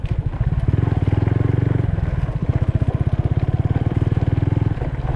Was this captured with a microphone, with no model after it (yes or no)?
no